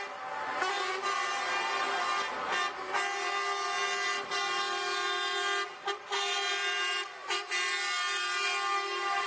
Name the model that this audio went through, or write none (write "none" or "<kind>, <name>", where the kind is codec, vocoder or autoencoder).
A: none